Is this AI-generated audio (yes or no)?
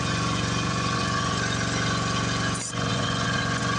yes